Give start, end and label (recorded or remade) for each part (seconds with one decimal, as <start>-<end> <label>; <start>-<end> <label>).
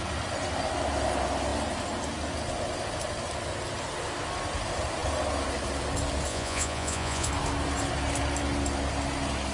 0.0-6.3 recorded; 6.3-7.3 remade; 7.3-9.5 recorded